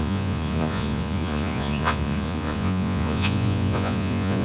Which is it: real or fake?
fake